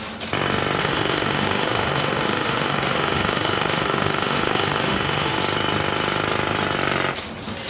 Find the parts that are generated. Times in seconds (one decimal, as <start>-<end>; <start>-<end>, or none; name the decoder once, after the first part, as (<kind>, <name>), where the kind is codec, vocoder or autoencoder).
0.8-5.4 (autoencoder, DAC-VAE)

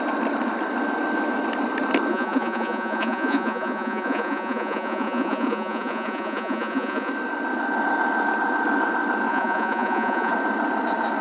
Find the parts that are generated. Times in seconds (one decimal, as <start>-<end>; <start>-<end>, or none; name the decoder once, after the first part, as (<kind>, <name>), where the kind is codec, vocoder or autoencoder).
2.1-7.1 (vocoder, Vocos); 9.3-10.3

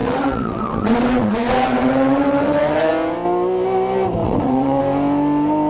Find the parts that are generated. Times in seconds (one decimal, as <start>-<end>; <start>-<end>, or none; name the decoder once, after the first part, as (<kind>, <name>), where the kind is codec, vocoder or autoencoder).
0.0-2.9 (vocoder, WaveNeXt); 4.2-4.8

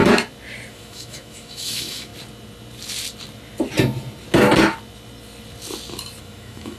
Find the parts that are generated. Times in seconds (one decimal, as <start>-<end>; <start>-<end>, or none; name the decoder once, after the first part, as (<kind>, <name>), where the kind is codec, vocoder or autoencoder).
0.7-2.1 (autoencoder, DAC-VAE); 6.2-6.8

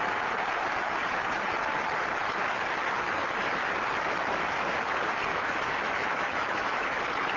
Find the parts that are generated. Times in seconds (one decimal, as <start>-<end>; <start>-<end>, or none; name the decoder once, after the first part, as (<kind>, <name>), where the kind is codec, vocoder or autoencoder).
5.3-7.0 (autoencoder, DAC-VAE)

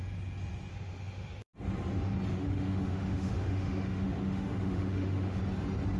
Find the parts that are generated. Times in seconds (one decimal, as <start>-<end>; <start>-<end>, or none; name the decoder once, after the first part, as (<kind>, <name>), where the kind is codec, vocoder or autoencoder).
0.7-1.5 (autoencoder, DAC-VAE); 2.3-5.4